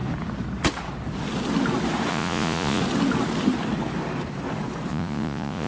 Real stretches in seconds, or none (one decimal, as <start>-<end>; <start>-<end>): 0.0-2.1; 2.8-4.9